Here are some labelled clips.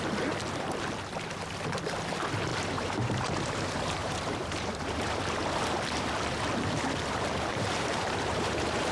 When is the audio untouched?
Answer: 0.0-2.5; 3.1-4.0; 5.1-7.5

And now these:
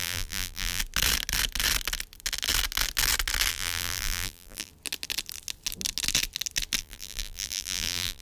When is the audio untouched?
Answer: 0.8-3.5; 4.7-6.8

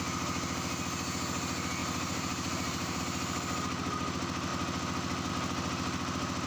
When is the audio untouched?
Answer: 0.0-1.8; 3.0-6.5

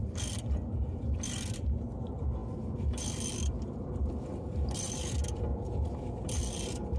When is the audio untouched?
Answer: 5.5-6.4

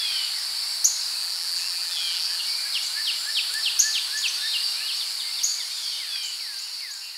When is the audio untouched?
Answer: 0.0-1.2; 2.4-7.2